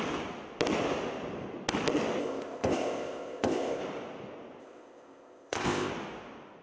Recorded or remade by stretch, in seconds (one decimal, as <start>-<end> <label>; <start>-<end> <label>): 0.0-2.2 recorded; 2.2-3.8 remade; 3.8-4.6 recorded; 4.6-5.9 remade; 5.9-6.6 recorded